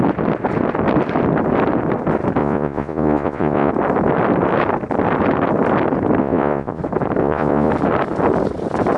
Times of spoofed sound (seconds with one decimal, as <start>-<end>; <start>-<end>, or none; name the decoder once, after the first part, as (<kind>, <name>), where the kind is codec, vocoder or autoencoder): 2.4-3.7 (vocoder, Vocos); 6.2-6.8; 7.2-7.7

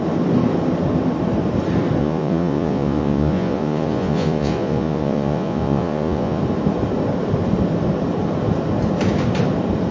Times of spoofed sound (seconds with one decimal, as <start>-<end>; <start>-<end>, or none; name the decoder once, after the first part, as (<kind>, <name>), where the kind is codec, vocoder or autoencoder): 2.0-6.4 (vocoder, Vocos)

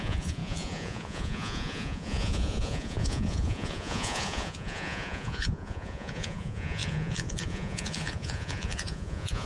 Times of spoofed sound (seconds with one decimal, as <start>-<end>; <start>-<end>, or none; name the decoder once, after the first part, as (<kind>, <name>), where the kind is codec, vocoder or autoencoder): 0.0-9.5 (vocoder, Vocos)

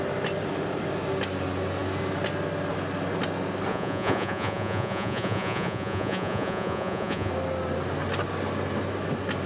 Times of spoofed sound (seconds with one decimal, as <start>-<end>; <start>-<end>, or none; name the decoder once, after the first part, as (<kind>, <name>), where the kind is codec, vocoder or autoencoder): 3.7-7.3 (vocoder, Vocos)

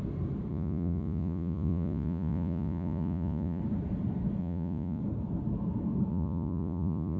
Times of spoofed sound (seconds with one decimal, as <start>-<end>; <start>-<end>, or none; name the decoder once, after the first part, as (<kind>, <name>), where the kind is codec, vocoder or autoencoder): 0.5-3.6 (vocoder, Vocos); 4.4-5.0; 6.1-7.2

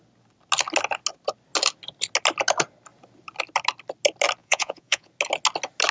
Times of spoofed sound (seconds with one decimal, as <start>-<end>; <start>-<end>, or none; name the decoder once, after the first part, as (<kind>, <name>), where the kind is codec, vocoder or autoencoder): 4.4-5.1 (vocoder, Vocos)

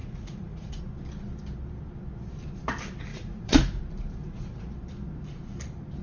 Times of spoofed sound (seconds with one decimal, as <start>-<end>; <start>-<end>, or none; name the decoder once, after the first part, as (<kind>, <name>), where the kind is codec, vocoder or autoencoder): 0.0-0.8 (vocoder, Vocos); 3.1-3.8; 4.2-4.7

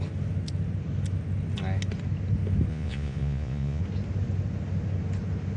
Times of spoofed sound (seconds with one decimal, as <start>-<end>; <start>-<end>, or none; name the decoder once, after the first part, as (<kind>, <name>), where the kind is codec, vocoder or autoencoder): 2.7-3.8 (vocoder, Vocos)